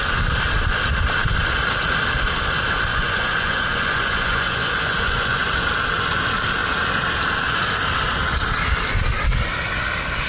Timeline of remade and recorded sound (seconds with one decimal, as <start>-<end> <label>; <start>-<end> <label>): 0.0-2.9 recorded; 2.9-5.5 remade; 5.5-10.3 recorded